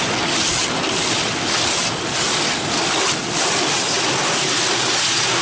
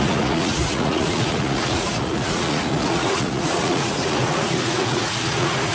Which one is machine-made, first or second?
second